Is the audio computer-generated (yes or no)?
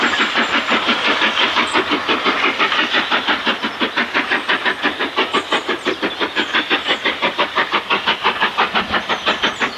no